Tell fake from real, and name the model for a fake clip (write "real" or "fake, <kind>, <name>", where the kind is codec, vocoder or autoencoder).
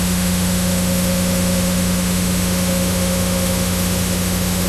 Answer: fake, autoencoder, DAC-VAE